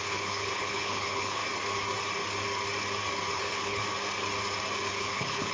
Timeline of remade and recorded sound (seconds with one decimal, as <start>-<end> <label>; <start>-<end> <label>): 0.0-1.4 remade; 1.4-3.3 recorded; 3.3-3.8 remade; 3.8-4.9 recorded; 4.9-5.5 remade

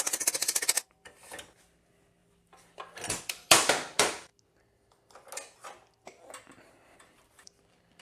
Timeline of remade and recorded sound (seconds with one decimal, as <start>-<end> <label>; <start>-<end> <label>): 0.0-2.2 remade; 2.2-3.2 recorded; 3.2-4.3 remade; 4.3-6.7 recorded; 6.7-8.0 remade

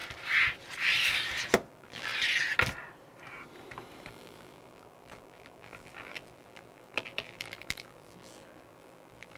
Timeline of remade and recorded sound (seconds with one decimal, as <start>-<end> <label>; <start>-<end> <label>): 0.0-1.7 recorded; 1.7-2.1 remade; 2.1-4.1 recorded; 4.1-9.4 remade

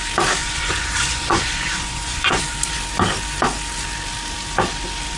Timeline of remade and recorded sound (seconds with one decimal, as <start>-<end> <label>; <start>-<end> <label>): 0.0-0.4 recorded; 0.4-2.4 remade; 2.4-5.2 recorded

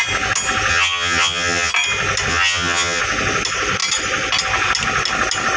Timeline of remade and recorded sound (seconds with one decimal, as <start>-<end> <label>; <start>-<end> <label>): 0.0-0.7 recorded; 0.7-1.7 remade; 1.7-2.3 recorded; 2.3-3.0 remade; 3.0-5.6 recorded

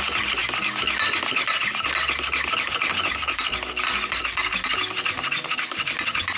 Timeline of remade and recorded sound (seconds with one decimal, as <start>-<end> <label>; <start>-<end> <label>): 0.0-6.4 recorded